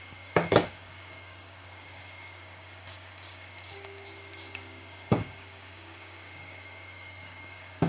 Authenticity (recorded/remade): remade